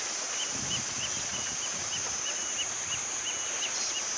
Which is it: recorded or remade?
recorded